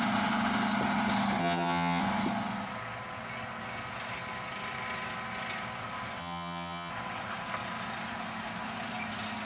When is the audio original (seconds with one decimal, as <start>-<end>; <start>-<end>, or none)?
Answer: 0.0-1.4; 2.0-6.2; 6.9-9.5